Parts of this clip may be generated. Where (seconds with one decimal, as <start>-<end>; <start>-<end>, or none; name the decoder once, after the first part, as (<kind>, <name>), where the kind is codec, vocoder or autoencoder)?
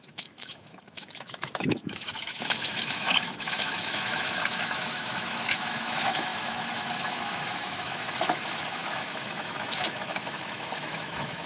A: 0.0-11.5 (autoencoder, DAC-VAE)